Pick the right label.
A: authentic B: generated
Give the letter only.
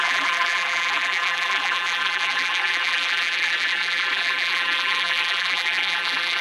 B